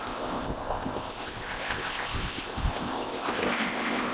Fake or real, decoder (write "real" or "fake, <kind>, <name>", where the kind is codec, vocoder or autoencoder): fake, codec, ZipCodec